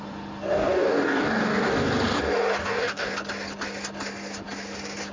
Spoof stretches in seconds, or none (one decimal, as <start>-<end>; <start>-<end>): 0.5-1.9; 2.6-3.1